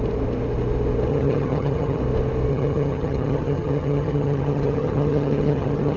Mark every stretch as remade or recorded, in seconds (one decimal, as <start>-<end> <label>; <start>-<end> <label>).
0.0-1.1 recorded; 1.1-2.0 remade; 2.0-2.5 recorded; 2.5-6.0 remade